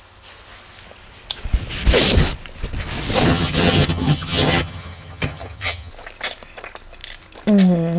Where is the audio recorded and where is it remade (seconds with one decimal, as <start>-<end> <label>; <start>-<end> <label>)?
0.0-3.3 recorded; 3.3-5.9 remade; 5.9-8.0 recorded